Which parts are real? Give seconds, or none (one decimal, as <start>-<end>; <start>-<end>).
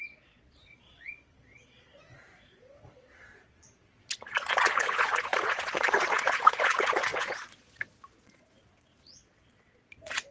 none